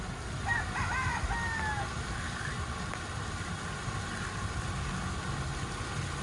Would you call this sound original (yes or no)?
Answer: yes